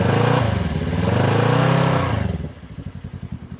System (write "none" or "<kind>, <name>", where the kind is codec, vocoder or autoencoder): none